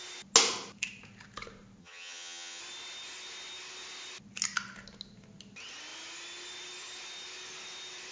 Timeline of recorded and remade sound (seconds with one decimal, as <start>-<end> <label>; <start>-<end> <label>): 0.0-1.8 recorded; 1.8-2.6 remade; 2.6-8.1 recorded